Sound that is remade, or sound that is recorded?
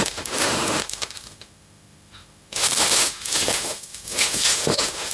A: remade